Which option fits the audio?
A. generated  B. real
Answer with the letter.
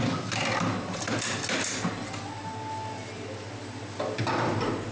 B